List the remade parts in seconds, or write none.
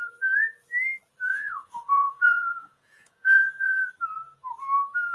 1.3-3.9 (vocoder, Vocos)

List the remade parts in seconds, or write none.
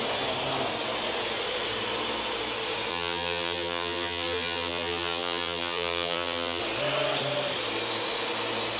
2.9-6.6 (vocoder, BigVGAN v2)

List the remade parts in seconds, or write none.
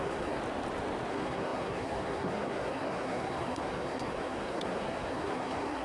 0.0-0.4 (codec, SNAC); 1.1-5.8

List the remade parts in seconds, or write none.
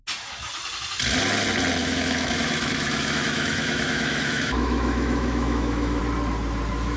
1.8-6.0 (autoencoder, DAC-VAE)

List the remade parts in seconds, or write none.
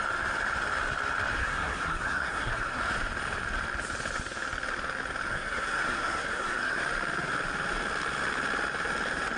1.4-2.8 (codec, SNAC); 5.3-6.8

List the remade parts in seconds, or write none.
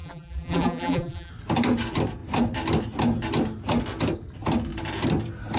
0.0-1.3 (vocoder, BigVGAN v2)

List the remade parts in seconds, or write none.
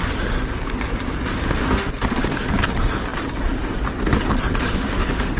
1.3-1.9 (autoencoder, DAC-VAE); 4.7-5.4